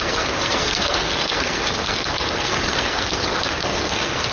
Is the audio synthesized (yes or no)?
yes